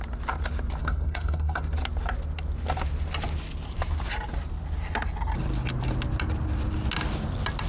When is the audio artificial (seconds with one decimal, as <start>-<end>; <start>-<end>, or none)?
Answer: 0.8-1.6